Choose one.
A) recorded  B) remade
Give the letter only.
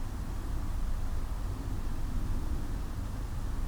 A